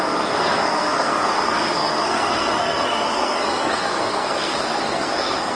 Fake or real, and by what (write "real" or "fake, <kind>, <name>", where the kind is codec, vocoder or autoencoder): fake, codec, SNAC